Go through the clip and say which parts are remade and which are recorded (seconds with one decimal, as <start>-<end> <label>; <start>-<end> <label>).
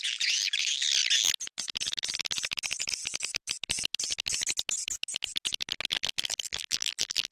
0.0-5.9 recorded; 5.9-7.3 remade